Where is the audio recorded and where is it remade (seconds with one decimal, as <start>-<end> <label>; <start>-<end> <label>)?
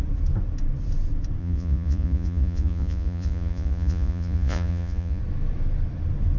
0.0-1.4 recorded; 1.4-5.2 remade; 5.2-6.4 recorded